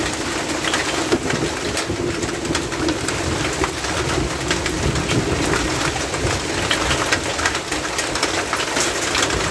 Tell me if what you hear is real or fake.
real